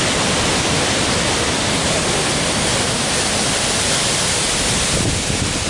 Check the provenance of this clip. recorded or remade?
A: recorded